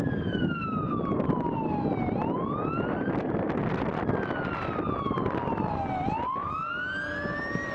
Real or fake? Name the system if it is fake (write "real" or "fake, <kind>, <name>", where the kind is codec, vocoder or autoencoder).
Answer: real